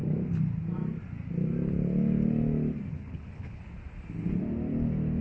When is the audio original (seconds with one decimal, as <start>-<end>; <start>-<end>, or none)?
0.0-2.9; 3.6-5.2